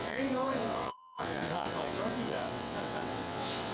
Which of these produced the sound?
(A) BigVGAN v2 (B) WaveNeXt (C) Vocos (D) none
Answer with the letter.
B